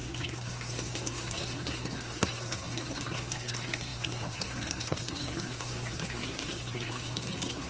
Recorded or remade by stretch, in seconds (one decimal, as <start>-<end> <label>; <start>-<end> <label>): 0.0-7.7 remade